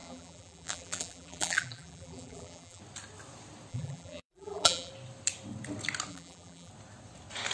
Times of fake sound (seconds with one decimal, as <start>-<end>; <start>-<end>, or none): 0.0-2.8; 3.7-4.9; 6.1-6.7

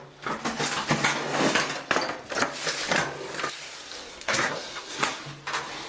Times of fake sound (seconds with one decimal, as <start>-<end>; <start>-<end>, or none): 4.1-5.2